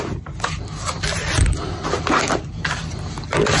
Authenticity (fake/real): real